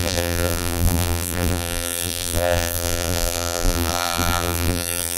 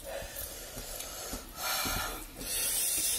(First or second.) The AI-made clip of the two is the first